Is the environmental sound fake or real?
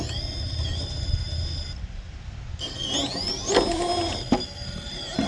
real